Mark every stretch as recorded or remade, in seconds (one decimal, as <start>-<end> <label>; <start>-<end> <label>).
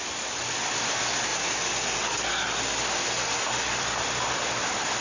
0.0-1.3 remade; 1.3-3.5 recorded; 3.5-5.0 remade